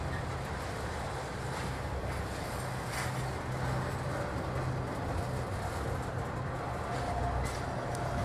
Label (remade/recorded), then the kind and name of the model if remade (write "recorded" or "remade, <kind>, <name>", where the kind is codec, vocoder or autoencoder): recorded